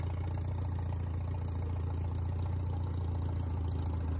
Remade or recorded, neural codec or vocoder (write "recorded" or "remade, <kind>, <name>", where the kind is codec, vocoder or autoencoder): recorded